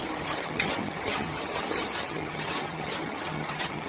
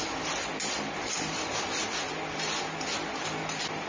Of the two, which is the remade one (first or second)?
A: first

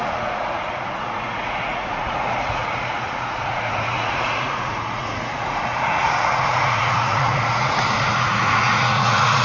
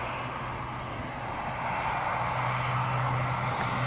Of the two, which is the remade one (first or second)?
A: first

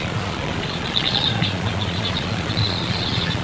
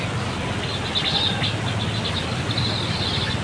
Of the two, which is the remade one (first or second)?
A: first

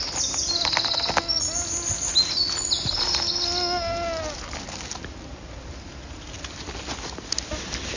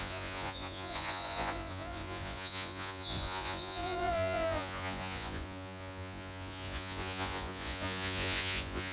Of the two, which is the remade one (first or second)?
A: second